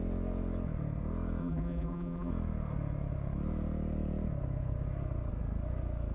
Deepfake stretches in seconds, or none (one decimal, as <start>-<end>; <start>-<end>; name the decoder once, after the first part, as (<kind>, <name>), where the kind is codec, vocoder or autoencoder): 1.4-2.3 (vocoder, BigVGAN v2)